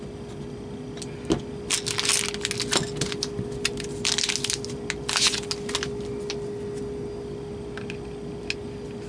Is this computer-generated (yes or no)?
no